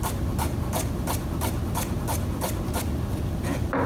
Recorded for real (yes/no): yes